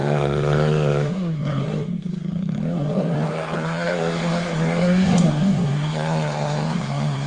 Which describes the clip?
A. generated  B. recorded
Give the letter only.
A